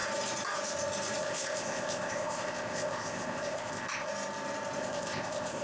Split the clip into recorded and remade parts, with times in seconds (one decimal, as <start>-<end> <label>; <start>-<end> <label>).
0.0-1.2 recorded; 1.2-4.1 remade; 4.1-4.8 recorded; 4.8-5.6 remade